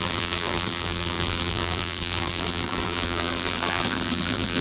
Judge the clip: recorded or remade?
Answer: remade